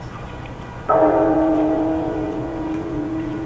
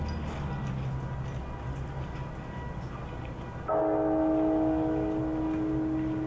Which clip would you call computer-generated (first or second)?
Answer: first